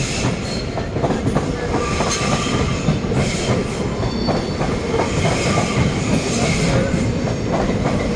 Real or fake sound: real